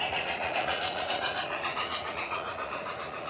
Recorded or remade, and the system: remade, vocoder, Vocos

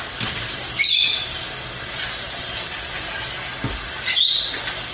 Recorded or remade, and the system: recorded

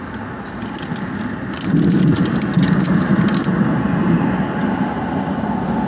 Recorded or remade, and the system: recorded